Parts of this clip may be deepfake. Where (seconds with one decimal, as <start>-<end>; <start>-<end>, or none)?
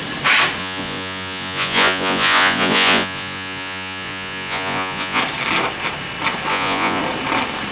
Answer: 0.6-5.2; 6.5-7.0